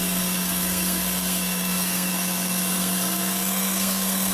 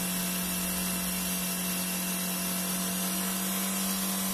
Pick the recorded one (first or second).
second